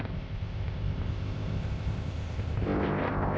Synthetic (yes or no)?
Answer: yes